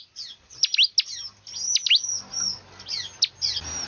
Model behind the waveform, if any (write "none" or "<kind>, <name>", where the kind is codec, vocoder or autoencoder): none